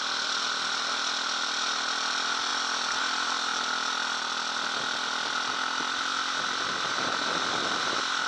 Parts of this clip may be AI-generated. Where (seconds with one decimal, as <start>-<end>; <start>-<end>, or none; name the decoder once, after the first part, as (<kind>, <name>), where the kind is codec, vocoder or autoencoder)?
0.0-2.5 (vocoder, BigVGAN v2); 3.0-3.5; 5.5-8.3